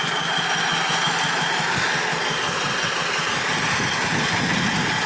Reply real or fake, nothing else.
real